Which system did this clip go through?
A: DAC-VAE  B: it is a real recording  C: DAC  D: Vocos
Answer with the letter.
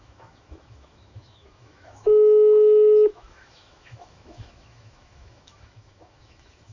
A